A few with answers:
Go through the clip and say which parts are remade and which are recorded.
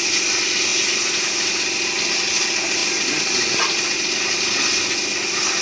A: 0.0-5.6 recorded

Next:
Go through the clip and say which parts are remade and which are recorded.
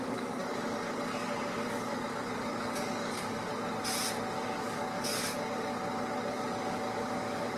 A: 0.0-3.5 remade; 3.5-4.6 recorded; 4.6-5.7 remade; 5.7-6.3 recorded; 6.3-7.6 remade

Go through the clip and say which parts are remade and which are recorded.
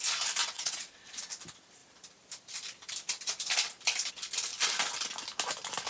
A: 0.0-0.4 recorded; 0.4-1.1 remade; 1.1-5.9 recorded